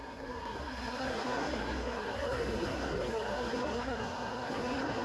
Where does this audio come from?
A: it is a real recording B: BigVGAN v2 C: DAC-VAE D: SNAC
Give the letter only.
D